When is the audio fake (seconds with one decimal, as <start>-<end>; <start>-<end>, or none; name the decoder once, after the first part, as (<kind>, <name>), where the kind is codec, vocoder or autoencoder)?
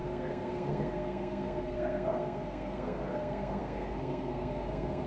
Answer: 0.0-5.1 (codec, SNAC)